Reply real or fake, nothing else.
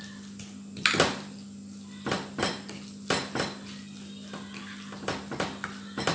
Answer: real